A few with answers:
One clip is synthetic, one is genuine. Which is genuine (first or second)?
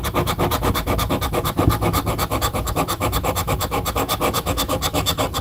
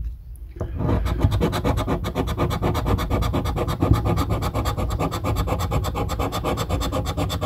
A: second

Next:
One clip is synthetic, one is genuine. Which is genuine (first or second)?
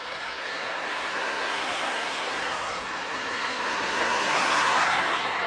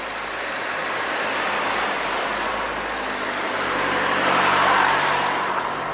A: second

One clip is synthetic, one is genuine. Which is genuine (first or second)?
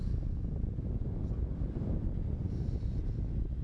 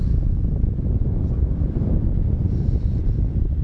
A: first